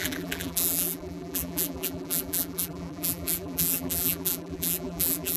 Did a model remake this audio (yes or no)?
yes